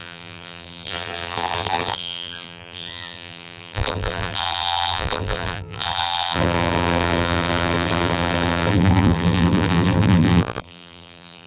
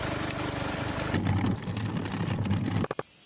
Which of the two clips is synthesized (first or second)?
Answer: first